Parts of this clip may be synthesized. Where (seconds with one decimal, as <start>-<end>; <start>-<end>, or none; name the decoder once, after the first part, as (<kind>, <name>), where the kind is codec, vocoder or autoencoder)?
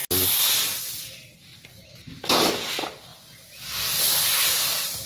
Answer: none